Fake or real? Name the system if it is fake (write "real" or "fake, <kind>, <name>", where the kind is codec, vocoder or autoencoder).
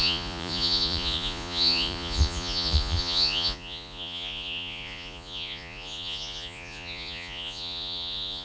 fake, vocoder, Vocos